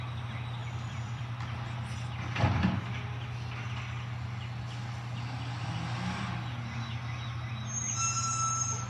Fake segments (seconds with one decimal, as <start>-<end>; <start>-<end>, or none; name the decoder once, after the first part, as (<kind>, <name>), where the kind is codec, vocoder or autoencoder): 0.6-1.2 (vocoder, BigVGAN v2)